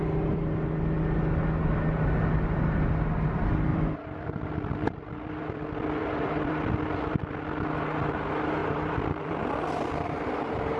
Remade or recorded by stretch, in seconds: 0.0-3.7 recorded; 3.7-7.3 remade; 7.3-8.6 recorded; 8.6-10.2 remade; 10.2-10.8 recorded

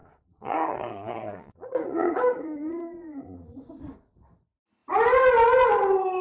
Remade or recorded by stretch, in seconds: 0.0-3.7 remade; 3.7-6.2 recorded

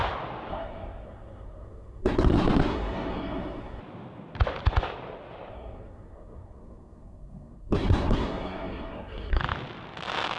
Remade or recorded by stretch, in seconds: 0.0-0.5 recorded; 0.5-3.8 remade; 3.8-5.5 recorded; 5.5-9.4 remade; 9.4-10.4 recorded